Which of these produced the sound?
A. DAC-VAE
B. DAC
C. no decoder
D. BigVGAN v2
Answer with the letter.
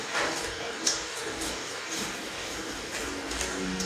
B